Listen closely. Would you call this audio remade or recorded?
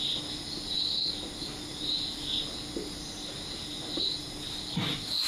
recorded